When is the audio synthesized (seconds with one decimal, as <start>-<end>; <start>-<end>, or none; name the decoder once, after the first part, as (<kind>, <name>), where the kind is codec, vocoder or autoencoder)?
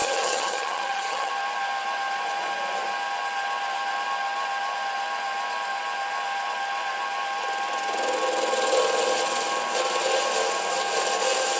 0.0-1.3 (vocoder, HiFi-GAN)